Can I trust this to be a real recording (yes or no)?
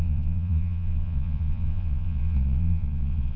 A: no